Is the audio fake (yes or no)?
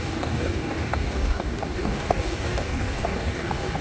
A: yes